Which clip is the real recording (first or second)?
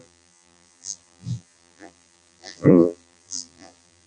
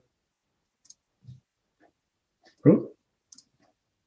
second